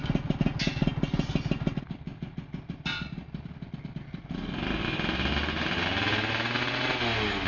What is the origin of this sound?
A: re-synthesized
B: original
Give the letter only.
B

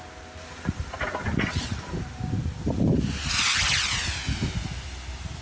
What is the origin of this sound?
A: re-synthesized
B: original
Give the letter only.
B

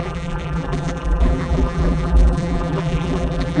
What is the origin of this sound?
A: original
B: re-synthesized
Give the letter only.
B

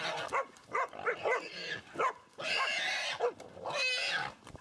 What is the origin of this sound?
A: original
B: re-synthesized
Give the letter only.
A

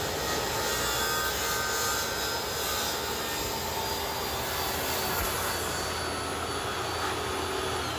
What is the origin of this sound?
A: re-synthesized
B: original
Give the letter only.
B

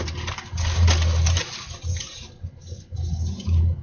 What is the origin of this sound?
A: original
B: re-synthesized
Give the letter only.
A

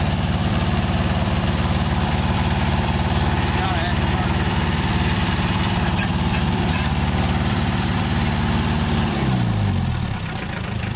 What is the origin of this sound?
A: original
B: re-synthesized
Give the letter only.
B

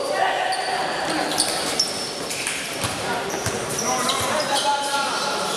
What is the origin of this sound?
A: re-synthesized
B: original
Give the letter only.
A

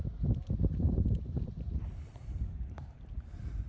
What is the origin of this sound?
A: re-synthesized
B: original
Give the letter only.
A